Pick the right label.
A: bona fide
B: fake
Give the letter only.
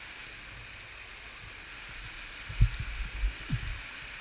A